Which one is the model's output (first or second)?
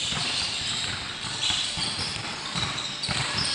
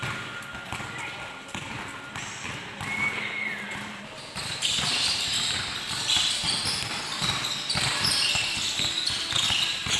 first